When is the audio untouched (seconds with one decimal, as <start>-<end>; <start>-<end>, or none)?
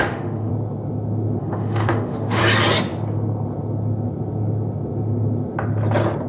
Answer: 0.5-1.4; 2.4-6.3